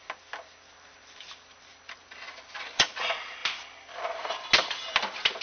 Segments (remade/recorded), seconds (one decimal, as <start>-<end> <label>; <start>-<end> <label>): 0.0-5.4 recorded